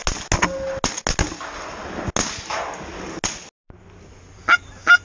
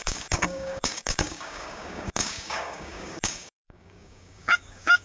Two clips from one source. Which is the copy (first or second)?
second